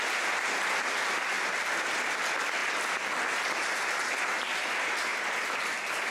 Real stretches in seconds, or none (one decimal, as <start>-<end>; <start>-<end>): 0.0-6.1